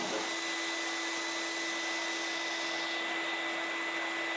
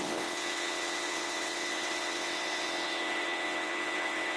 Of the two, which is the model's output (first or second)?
second